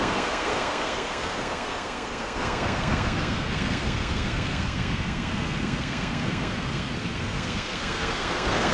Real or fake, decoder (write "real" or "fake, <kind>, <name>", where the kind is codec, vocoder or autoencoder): fake, codec, SNAC